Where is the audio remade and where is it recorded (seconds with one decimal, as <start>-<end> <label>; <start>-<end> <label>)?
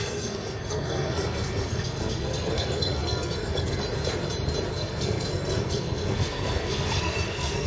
0.0-3.8 remade; 3.8-4.7 recorded; 4.7-7.7 remade